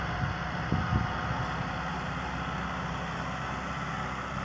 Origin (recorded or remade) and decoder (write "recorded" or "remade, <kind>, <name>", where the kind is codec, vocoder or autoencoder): recorded